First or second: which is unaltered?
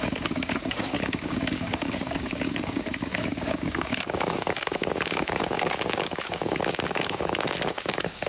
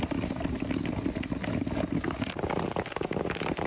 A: second